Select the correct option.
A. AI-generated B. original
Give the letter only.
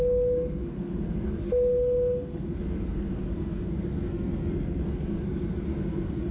A